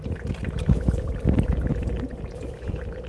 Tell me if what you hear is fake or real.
real